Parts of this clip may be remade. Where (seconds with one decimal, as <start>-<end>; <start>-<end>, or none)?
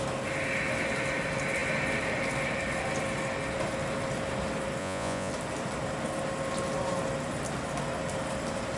4.8-5.3